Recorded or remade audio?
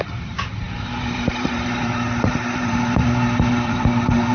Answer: remade